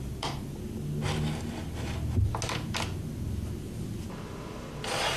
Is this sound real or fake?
real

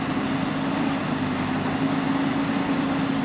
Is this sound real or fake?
real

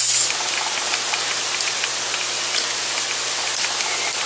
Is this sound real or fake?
real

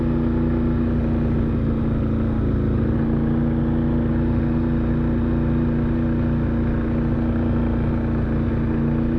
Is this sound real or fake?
real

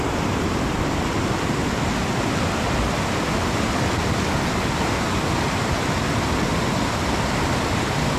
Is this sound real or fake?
real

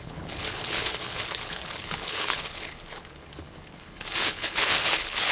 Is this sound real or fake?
fake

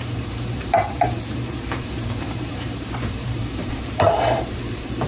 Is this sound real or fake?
fake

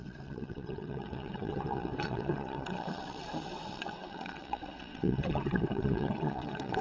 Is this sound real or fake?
fake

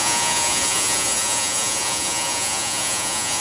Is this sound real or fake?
fake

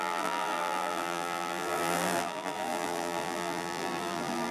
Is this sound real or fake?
fake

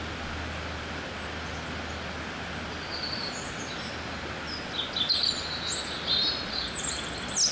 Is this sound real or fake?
real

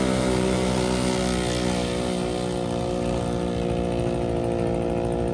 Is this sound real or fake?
real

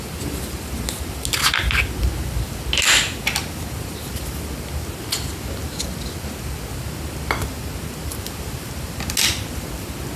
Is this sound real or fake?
real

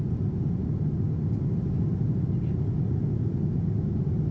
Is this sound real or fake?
real